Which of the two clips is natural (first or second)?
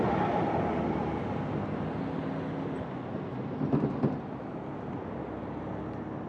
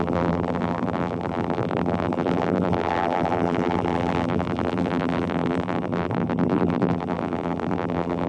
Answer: first